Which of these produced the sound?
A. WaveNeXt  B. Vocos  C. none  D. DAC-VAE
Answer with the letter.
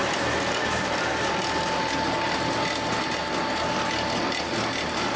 C